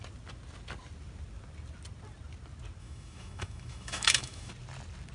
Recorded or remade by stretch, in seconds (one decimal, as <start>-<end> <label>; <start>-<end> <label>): 0.0-2.8 recorded; 2.8-4.5 remade; 4.5-5.1 recorded